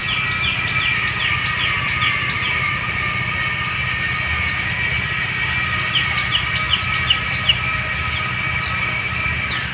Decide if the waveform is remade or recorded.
recorded